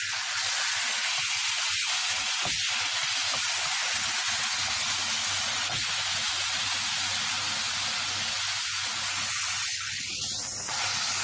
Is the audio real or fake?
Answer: real